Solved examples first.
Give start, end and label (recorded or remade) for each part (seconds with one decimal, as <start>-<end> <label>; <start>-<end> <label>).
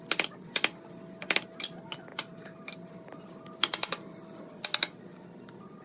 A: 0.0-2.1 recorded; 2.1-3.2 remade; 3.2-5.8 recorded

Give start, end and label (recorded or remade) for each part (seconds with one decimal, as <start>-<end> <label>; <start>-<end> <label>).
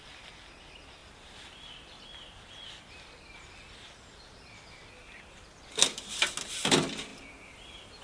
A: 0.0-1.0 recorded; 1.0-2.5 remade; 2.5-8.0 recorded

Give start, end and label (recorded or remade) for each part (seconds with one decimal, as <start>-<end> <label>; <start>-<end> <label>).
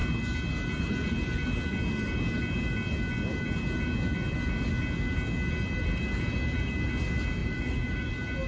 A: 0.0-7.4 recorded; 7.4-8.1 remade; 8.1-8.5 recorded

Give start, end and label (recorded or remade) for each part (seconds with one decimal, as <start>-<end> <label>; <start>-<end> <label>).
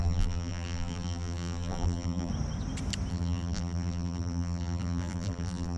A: 0.0-2.3 remade; 2.3-3.1 recorded; 3.1-5.8 remade